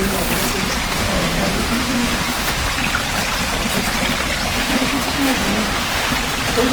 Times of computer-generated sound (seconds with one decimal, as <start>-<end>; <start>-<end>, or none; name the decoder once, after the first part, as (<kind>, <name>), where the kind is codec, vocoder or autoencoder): 0.9-2.6 (autoencoder, DAC-VAE); 4.6-6.1